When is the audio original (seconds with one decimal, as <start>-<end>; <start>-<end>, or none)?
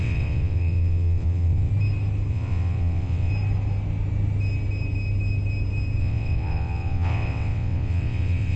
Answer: 1.7-2.3; 3.3-6.0